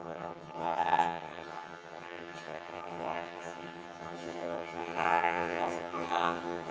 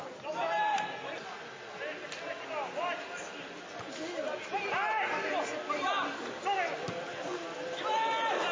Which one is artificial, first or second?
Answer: first